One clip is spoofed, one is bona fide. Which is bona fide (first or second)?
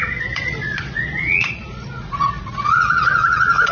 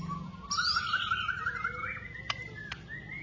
second